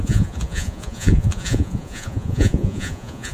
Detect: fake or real fake